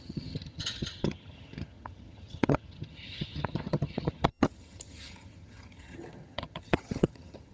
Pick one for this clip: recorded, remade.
remade